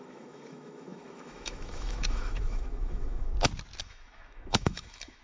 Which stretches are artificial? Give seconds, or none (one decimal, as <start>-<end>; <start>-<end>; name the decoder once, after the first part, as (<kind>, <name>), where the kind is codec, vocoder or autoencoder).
0.0-3.3 (autoencoder, DAC-VAE); 3.8-5.2